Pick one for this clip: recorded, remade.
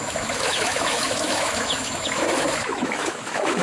remade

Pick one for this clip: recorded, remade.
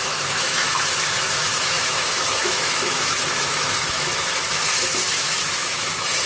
remade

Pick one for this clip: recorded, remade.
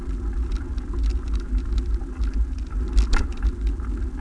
recorded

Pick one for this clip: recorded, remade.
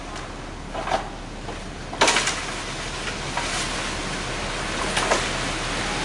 recorded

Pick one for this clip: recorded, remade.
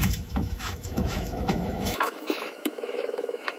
remade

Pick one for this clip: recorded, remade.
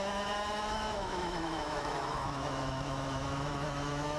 remade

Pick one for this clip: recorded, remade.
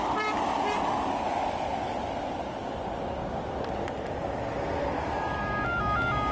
recorded